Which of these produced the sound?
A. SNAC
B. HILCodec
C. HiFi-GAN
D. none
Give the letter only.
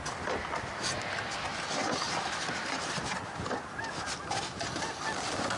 D